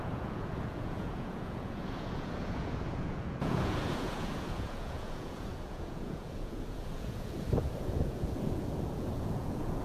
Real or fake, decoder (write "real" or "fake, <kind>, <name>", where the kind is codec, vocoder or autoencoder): fake, vocoder, Vocos